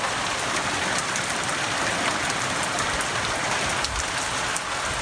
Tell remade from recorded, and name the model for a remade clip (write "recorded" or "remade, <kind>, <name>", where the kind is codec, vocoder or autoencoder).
recorded